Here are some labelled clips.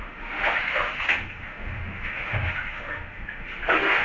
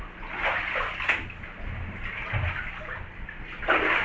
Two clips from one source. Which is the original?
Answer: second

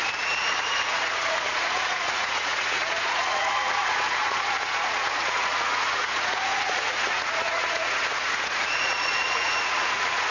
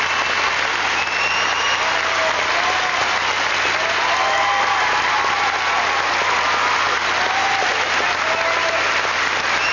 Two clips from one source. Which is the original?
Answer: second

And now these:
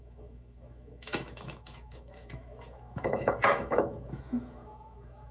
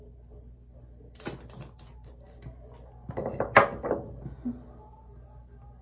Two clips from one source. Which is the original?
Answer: second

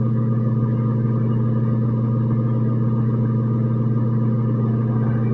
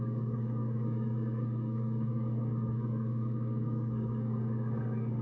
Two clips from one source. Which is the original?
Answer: first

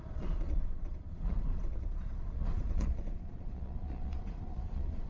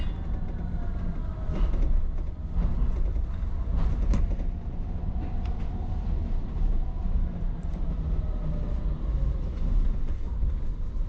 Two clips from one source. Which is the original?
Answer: second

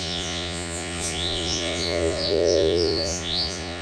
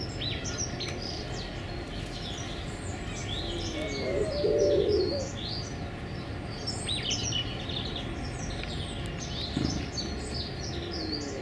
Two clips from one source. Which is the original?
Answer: second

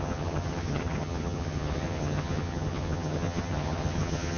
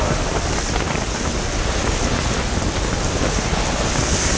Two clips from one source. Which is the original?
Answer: second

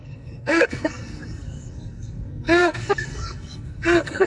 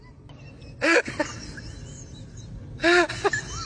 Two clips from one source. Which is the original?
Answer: second